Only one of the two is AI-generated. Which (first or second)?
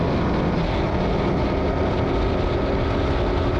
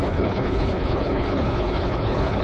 second